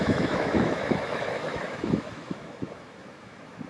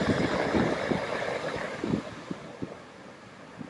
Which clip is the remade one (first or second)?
first